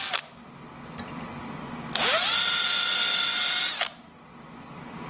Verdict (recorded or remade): recorded